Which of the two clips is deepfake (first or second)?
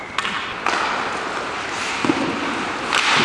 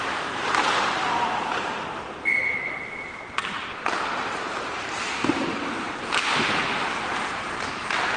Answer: second